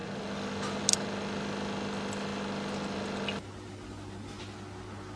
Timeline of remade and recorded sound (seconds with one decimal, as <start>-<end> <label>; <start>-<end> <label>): 0.0-5.2 recorded

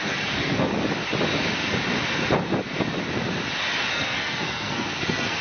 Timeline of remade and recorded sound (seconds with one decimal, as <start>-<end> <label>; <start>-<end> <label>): 0.0-0.7 remade; 0.7-3.9 recorded; 3.9-5.4 remade

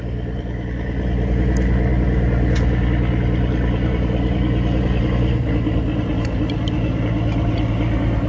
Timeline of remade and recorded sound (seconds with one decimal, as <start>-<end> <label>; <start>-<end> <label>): 0.0-8.3 recorded

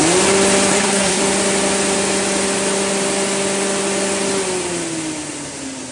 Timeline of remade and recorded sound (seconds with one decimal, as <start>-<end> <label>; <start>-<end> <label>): 0.0-0.7 recorded; 0.7-1.2 remade; 1.2-5.9 recorded

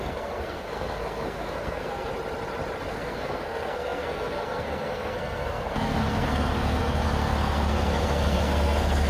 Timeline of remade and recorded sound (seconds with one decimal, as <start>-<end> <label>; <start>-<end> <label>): 0.0-2.1 remade; 2.1-2.9 recorded; 2.9-9.1 remade

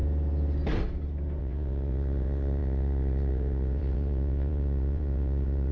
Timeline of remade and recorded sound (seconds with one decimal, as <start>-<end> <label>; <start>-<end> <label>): 0.0-1.4 recorded; 1.4-5.7 remade

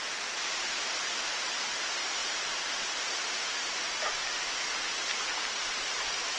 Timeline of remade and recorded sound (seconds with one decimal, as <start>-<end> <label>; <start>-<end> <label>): 0.0-2.2 remade; 2.2-6.0 recorded; 6.0-6.4 remade

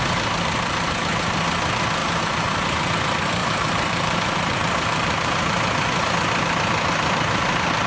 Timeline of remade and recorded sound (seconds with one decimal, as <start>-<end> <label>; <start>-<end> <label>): 0.0-2.0 recorded; 2.0-2.9 remade; 2.9-3.4 recorded; 3.4-6.1 remade; 6.1-7.9 recorded